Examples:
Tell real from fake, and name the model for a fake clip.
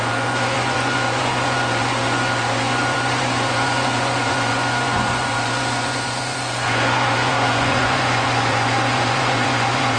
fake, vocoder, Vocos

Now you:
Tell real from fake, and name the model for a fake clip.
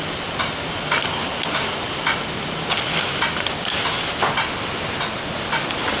real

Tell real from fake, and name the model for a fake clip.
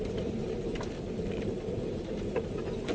fake, vocoder, BigVGAN v2